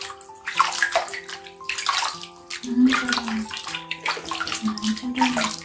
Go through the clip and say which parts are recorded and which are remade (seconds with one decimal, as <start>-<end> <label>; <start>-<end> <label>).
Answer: 0.0-5.6 recorded